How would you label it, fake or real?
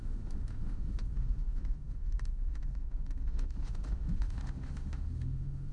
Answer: fake